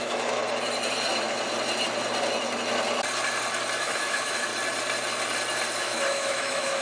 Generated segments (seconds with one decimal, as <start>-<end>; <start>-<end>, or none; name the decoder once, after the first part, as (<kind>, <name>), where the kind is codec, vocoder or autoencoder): 0.0-0.4 (autoencoder, DAC-VAE); 3.8-4.5; 5.8-6.8